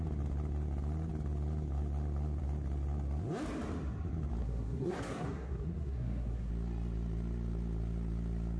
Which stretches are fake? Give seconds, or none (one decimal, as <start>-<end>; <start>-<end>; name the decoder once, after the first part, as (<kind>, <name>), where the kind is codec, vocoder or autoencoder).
4.4-6.5 (codec, SNAC)